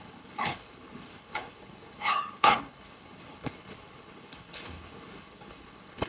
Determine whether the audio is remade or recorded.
remade